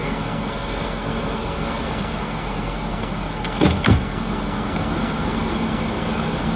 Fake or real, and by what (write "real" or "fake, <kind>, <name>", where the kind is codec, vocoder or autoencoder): fake, codec, SNAC